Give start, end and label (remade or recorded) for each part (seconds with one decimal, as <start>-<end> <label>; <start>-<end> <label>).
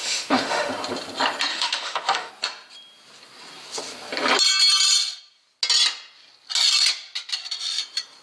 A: 0.0-0.7 remade; 0.7-1.5 recorded; 1.5-2.3 remade; 2.3-8.2 recorded